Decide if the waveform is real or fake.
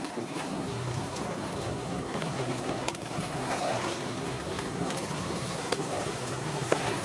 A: fake